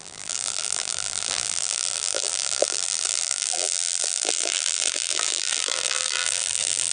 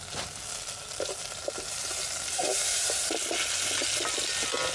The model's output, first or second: first